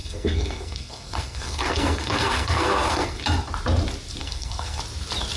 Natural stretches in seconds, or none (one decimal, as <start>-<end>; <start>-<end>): 3.2-4.2; 4.8-5.4